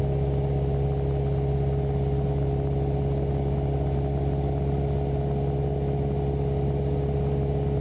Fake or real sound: real